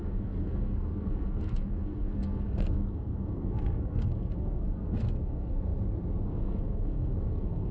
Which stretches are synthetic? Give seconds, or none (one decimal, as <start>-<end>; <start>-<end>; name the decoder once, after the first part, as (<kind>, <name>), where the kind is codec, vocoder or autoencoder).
0.0-5.7 (codec, SNAC); 6.2-7.7